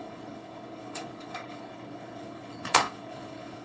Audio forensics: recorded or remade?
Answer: remade